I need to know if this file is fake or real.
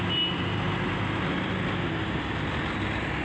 real